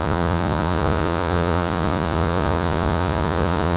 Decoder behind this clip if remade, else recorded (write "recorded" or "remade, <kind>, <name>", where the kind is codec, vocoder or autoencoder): remade, vocoder, Vocos